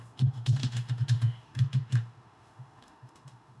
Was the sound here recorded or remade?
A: remade